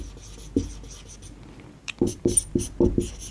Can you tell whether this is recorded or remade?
recorded